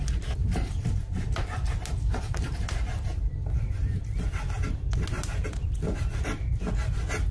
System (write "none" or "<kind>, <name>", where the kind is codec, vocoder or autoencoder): none